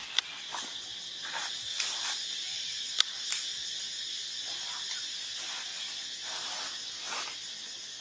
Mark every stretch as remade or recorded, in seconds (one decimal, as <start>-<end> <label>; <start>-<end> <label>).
0.0-8.0 recorded